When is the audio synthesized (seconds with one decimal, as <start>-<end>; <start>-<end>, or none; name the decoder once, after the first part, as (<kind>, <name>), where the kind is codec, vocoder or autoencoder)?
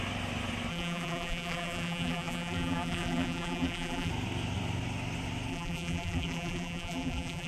0.7-4.1 (vocoder, BigVGAN v2); 5.5-7.5